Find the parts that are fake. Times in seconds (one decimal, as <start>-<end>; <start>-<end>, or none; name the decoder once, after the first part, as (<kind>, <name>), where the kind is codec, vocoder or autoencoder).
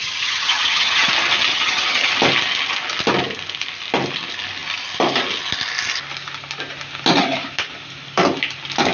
0.0-1.1 (vocoder, HiFi-GAN); 1.5-2.1